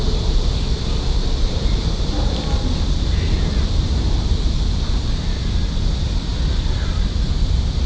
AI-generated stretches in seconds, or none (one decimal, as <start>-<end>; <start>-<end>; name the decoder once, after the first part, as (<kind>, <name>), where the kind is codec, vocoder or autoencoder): none